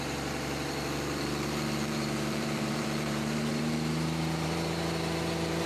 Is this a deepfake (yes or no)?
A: yes